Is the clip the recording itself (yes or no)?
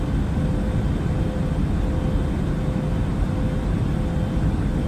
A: yes